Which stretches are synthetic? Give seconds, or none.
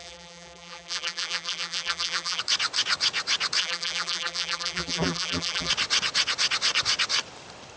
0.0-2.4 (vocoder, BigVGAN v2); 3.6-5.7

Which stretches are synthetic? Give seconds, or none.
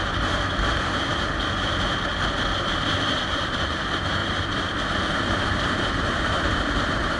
0.0-2.1 (vocoder, BigVGAN v2); 2.6-4.2; 5.1-7.2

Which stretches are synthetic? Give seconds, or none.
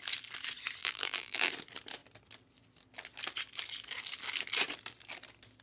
0.8-1.5 (vocoder, BigVGAN v2)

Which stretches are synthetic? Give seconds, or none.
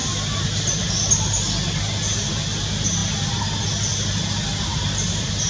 0.0-0.9 (vocoder, BigVGAN v2); 4.7-5.5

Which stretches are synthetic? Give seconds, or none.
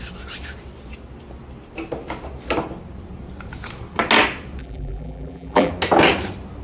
4.6-5.7 (vocoder, BigVGAN v2)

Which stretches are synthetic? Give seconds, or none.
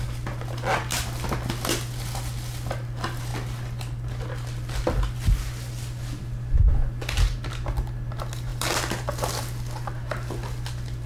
none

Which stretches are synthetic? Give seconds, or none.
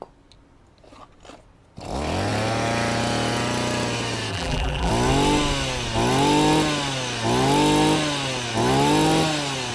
4.3-4.9 (vocoder, BigVGAN v2)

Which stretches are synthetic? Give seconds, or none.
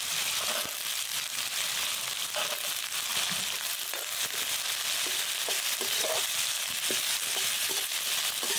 none